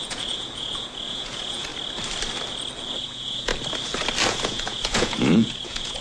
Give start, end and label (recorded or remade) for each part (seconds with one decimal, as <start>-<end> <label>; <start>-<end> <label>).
0.0-1.7 remade; 1.7-2.9 recorded; 2.9-3.5 remade; 3.5-4.3 recorded; 4.3-6.0 remade